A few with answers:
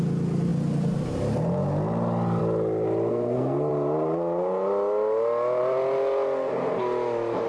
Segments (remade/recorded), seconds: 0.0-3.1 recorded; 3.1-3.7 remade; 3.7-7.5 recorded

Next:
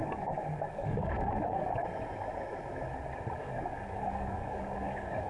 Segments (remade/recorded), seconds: 0.0-1.8 remade; 1.8-3.4 recorded; 3.4-5.3 remade